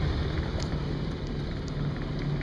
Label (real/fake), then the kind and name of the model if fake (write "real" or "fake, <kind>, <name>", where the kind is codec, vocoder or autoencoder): real